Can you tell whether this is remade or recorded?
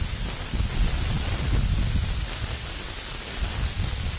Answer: recorded